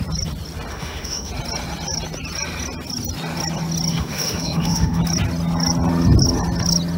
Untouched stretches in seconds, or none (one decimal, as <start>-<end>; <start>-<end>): 0.0-0.7; 1.3-3.9; 5.0-7.0